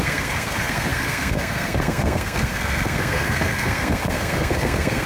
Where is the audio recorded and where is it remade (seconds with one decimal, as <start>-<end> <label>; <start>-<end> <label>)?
0.0-5.1 remade